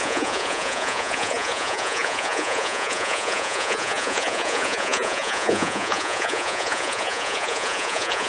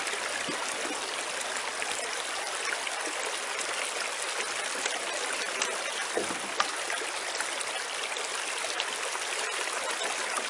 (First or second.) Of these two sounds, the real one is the second